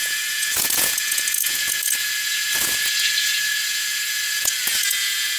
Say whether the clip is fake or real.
fake